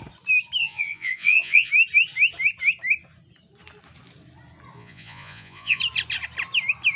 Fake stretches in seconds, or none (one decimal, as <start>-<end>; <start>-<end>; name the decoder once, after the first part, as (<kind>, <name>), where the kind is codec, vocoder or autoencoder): 0.6-1.7 (vocoder, Vocos); 4.8-5.8